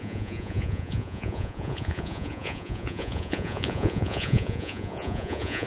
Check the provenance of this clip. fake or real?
fake